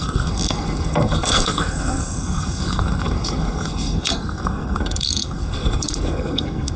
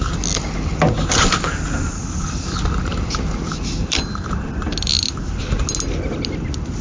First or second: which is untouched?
second